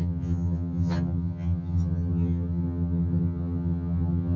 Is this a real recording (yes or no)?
no